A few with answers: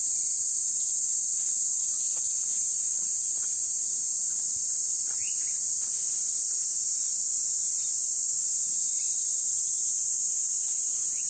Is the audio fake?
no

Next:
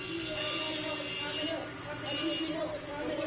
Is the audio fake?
no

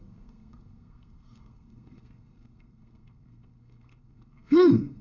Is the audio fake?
yes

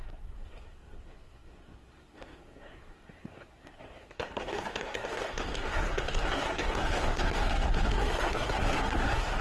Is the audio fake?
yes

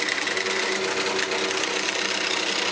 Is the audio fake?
no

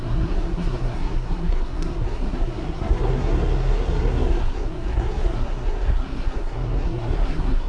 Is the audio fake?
yes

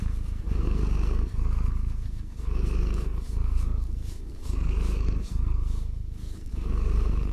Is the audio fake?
yes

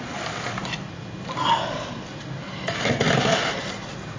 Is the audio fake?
no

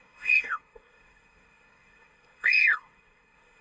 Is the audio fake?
yes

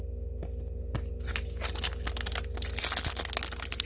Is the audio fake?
no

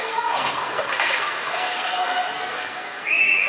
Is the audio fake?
yes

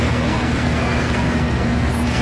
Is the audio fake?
yes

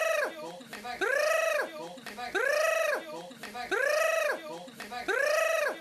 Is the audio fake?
no